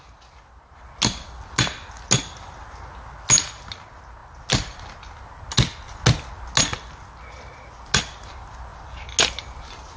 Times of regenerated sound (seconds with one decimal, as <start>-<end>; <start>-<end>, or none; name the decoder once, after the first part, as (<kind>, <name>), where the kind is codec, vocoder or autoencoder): none